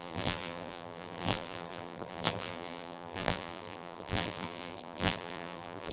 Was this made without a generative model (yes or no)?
no